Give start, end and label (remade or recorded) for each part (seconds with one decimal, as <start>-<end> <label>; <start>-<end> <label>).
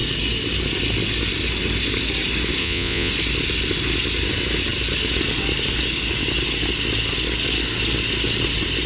0.0-2.6 recorded; 2.6-3.1 remade; 3.1-8.9 recorded